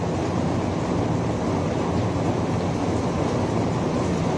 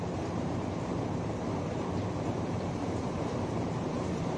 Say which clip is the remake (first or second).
second